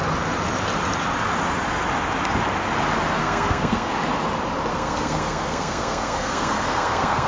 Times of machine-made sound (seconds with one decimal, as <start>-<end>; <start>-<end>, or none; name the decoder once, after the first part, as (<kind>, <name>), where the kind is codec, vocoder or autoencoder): 3.2-3.9 (codec, SNAC); 4.7-7.3